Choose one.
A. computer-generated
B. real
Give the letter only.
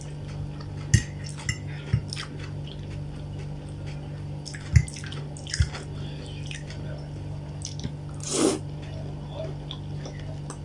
B